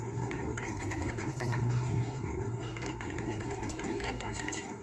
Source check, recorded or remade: remade